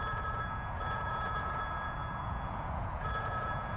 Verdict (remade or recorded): remade